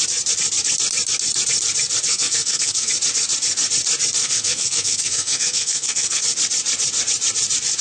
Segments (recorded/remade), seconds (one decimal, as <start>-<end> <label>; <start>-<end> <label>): 0.0-2.1 recorded; 2.1-2.9 remade; 2.9-4.2 recorded; 4.2-6.2 remade; 6.2-7.8 recorded